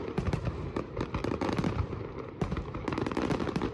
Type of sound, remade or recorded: recorded